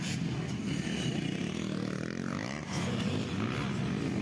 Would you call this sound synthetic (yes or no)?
no